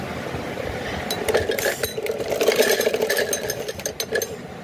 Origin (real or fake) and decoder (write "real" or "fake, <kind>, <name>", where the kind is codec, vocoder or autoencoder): real